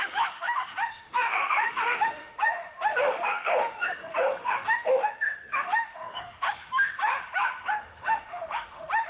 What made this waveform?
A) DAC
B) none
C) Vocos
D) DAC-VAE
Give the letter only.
D